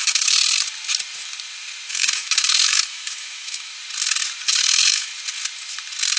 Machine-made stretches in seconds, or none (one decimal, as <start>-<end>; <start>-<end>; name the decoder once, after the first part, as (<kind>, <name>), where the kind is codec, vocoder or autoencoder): 0.0-0.4 (autoencoder, DAC-VAE); 1.9-3.7; 4.6-5.1